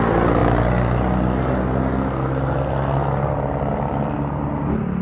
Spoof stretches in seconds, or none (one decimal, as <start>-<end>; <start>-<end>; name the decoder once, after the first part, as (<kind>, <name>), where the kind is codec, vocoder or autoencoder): none